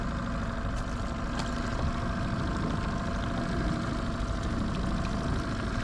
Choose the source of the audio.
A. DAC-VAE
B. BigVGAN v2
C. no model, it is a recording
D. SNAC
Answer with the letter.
C